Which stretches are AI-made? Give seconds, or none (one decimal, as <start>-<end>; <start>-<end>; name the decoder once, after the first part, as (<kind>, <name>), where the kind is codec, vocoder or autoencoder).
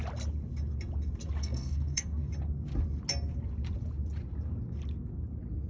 1.4-2.3 (codec, SNAC)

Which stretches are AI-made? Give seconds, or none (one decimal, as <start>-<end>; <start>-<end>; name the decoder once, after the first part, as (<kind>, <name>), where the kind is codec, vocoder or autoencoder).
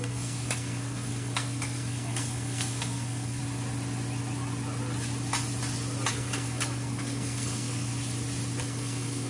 0.0-3.4 (codec, SNAC); 6.1-7.9; 8.6-9.3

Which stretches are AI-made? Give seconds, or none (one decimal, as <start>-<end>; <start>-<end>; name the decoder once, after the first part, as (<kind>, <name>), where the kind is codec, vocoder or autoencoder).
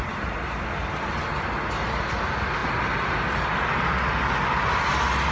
none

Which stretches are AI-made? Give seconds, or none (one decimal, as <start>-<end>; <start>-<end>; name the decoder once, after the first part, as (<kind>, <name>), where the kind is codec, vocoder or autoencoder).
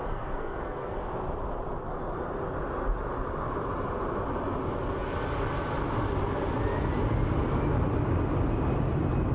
0.0-1.0 (codec, SNAC)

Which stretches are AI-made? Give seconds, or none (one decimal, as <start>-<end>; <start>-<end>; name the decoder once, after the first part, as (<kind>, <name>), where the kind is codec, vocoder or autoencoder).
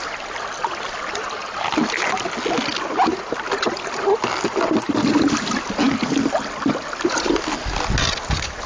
none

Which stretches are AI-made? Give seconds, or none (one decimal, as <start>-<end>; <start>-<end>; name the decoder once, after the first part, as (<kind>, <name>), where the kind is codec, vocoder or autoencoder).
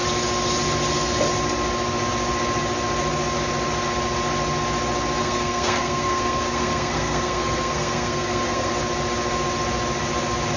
5.2-8.7 (codec, SNAC)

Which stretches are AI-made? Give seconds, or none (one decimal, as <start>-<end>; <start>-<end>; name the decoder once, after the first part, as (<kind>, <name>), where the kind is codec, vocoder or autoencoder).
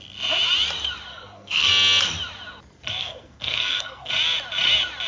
1.1-1.7 (codec, SNAC); 3.0-4.1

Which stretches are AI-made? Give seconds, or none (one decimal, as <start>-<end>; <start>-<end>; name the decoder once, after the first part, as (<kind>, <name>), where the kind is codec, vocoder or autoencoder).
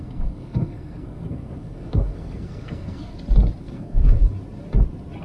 0.0-3.1 (codec, SNAC); 3.6-4.2